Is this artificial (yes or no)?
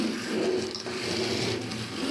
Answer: no